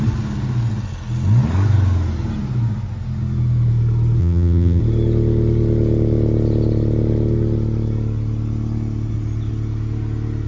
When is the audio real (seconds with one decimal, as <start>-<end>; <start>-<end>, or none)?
0.0-4.2; 4.8-10.5